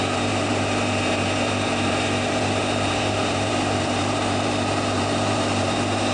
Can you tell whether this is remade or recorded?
remade